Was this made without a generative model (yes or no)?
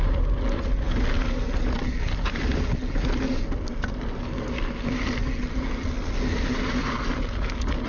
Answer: yes